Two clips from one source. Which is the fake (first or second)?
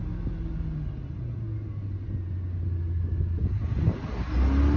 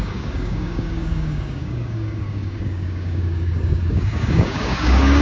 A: second